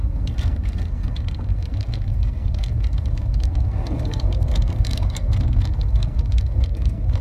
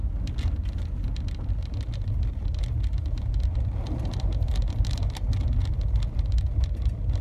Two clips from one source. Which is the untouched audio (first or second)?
second